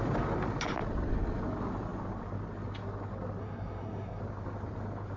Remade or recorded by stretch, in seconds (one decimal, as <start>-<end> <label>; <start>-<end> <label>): 0.0-3.4 recorded; 3.4-4.2 remade; 4.2-5.2 recorded